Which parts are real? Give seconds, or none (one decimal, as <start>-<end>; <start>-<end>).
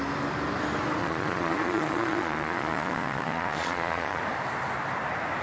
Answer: 0.0-1.0; 4.2-5.4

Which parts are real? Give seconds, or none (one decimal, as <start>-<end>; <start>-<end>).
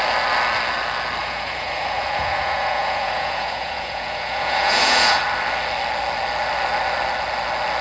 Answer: 0.0-1.2; 5.2-7.8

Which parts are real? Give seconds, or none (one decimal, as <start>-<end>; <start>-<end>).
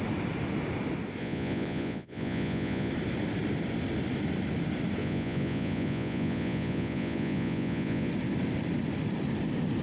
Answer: 0.0-1.2; 2.9-5.0; 8.1-9.8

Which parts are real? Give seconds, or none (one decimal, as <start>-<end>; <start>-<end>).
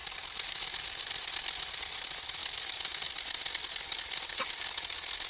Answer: 0.0-5.3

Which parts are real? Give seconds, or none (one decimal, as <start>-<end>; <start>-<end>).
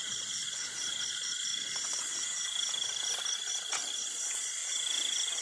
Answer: 2.1-3.3; 4.6-5.4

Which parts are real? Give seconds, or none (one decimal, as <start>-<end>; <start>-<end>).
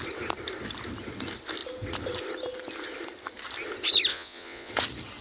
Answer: 0.0-4.1; 4.7-5.2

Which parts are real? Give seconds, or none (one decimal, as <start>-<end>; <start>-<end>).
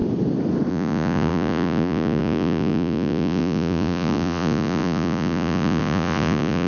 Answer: 0.0-0.7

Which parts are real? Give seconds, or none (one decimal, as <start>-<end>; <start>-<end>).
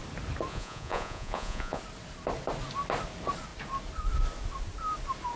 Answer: 0.0-0.5; 1.8-5.4